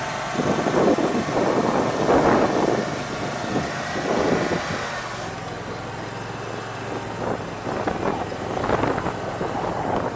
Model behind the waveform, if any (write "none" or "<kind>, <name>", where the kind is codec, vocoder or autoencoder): none